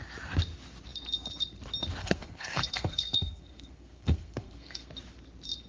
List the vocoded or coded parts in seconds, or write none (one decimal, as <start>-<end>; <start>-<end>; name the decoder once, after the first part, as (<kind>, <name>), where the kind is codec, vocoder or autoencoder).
2.0-4.9 (codec, SNAC)

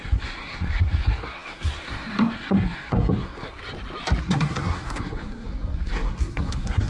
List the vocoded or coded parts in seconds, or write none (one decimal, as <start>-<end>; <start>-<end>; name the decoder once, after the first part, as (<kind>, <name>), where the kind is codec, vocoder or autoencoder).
0.0-3.6 (codec, SNAC); 4.2-6.9